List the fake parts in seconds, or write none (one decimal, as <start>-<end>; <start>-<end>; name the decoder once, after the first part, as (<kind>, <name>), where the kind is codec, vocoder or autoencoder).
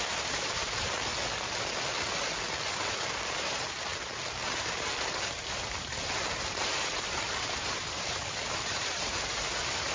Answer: 0.0-1.1 (vocoder, BigVGAN v2); 2.7-3.9; 4.8-9.9